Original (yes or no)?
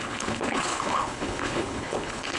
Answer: no